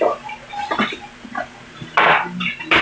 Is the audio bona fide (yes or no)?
yes